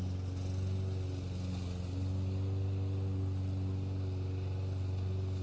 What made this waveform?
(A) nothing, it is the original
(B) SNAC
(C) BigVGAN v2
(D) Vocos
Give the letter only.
A